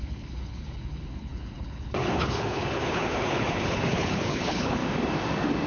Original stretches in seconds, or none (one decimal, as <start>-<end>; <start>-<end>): 4.8-5.7